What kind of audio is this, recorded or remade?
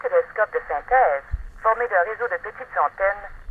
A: recorded